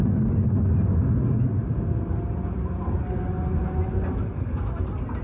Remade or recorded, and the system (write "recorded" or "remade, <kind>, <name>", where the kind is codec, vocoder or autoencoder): recorded